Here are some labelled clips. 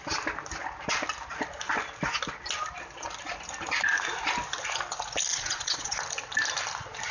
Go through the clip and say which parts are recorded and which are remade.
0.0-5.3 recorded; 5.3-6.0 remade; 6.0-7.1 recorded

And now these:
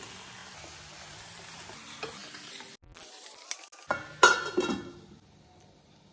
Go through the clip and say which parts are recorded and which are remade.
0.0-6.1 recorded

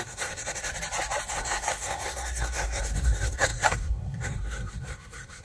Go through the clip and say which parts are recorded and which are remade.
0.0-0.7 remade; 0.7-1.3 recorded; 1.3-5.4 remade

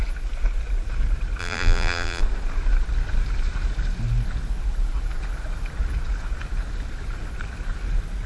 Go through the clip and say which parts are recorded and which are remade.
0.0-1.4 recorded; 1.4-2.2 remade; 2.2-8.3 recorded

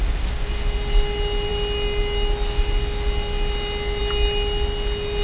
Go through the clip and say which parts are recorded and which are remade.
0.0-5.2 recorded

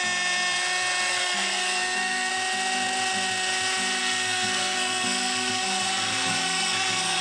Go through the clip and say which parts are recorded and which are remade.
0.0-1.1 recorded; 1.1-2.3 remade; 2.3-4.0 recorded; 4.0-7.2 remade